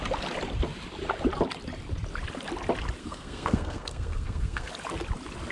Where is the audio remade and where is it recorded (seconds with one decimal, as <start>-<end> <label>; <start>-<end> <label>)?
0.0-3.0 recorded; 3.0-4.7 remade; 4.7-5.5 recorded